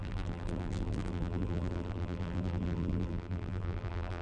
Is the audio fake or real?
fake